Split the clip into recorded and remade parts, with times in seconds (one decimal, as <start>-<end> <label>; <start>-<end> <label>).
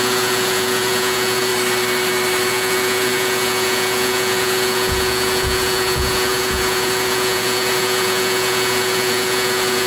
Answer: 0.0-1.5 remade; 1.5-2.5 recorded; 2.5-9.9 remade